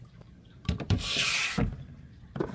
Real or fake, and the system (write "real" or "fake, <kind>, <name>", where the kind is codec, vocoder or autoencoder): fake, vocoder, BigVGAN v2